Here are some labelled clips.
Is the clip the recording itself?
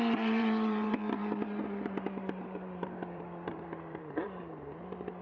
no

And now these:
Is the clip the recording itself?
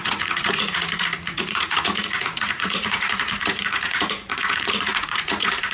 no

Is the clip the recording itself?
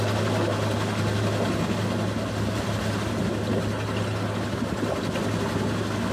yes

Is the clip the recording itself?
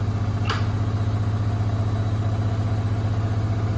yes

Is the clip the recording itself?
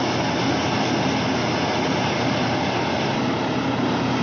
yes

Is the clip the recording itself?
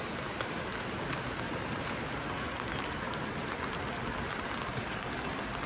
yes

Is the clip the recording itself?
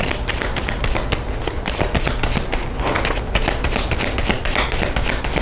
yes